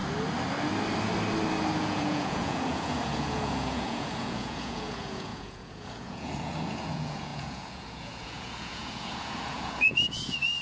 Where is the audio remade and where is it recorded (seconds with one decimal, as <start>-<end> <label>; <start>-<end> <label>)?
0.0-1.8 recorded; 1.8-10.6 remade